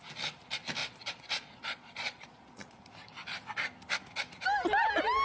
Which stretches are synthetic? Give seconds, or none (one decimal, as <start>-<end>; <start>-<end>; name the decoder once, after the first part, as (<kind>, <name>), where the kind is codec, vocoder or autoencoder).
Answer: 0.8-2.8 (vocoder, Vocos)